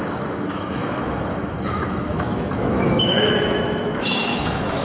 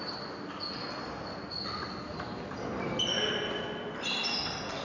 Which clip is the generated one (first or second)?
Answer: first